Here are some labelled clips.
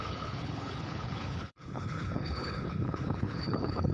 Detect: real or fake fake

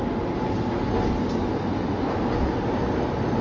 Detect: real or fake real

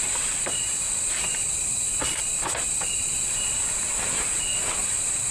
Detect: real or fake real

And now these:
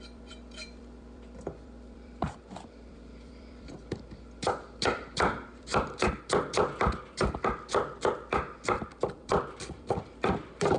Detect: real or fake fake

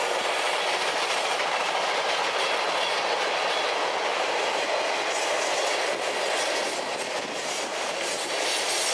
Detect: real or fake real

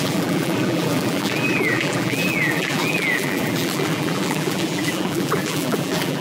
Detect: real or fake fake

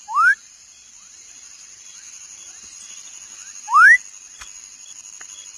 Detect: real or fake real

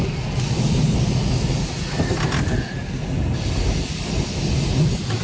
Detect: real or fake real